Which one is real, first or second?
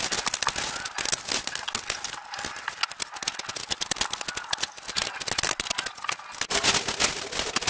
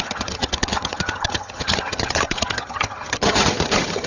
first